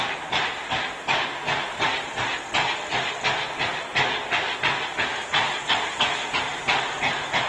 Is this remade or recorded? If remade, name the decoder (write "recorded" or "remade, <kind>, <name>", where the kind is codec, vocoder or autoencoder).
recorded